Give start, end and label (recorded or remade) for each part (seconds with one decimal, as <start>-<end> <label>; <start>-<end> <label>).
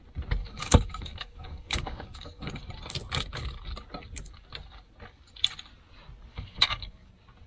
0.0-0.4 recorded; 0.4-2.5 remade; 2.5-6.3 recorded; 6.3-7.1 remade; 7.1-7.5 recorded